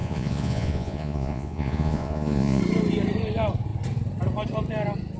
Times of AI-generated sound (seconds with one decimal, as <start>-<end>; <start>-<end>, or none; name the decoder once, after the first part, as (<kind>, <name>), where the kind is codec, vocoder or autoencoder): 0.0-2.6 (vocoder, Vocos)